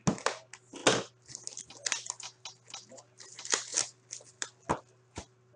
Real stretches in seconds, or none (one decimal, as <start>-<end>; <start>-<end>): 0.0-5.6